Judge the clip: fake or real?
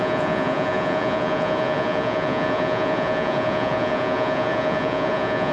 fake